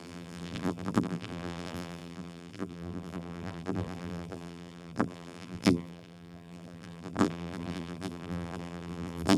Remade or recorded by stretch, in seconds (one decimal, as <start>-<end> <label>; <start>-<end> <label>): 0.0-9.4 remade